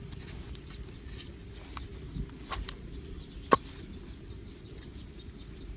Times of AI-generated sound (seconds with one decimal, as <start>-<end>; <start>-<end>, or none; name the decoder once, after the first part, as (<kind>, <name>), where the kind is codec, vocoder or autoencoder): none